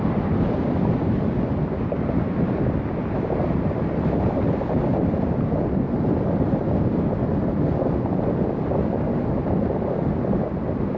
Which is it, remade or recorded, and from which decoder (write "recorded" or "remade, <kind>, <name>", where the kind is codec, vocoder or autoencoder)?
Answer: recorded